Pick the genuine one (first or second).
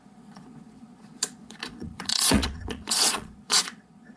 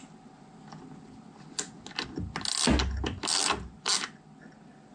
second